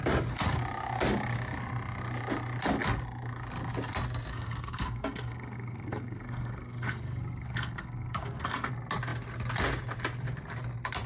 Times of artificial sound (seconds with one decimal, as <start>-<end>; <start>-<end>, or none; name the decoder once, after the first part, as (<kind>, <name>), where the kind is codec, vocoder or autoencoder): 4.3-8.7 (codec, SNAC)